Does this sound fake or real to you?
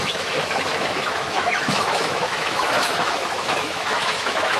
fake